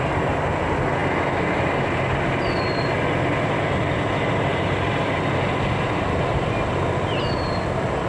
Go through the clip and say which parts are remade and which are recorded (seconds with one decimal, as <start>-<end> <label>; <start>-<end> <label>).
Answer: 0.0-4.5 recorded; 4.5-5.3 remade; 5.3-8.1 recorded